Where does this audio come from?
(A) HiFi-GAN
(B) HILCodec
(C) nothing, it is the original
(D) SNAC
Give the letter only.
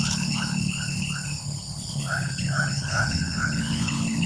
B